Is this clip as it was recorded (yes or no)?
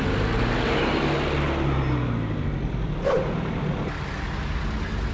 yes